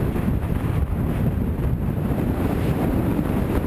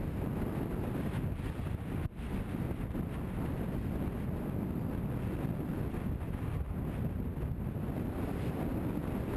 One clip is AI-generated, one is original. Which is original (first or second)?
second